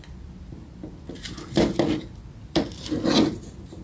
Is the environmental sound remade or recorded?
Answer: recorded